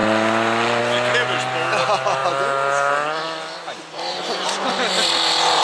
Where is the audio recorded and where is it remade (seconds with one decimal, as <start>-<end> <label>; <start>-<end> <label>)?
0.0-5.6 recorded